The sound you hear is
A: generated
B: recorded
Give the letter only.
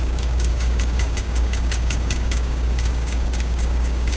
A